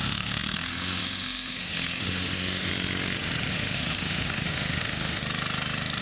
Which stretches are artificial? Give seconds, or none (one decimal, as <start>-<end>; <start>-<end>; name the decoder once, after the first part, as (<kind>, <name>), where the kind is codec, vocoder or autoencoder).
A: 0.0-2.7 (autoencoder, DAC-VAE); 3.5-5.2